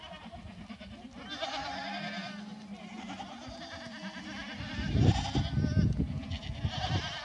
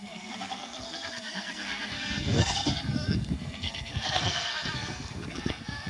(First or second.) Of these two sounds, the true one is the first